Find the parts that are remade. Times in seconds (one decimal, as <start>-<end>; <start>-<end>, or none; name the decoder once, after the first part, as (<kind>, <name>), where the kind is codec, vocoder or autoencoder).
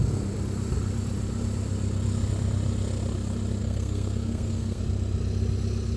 3.6-4.8 (codec, SNAC)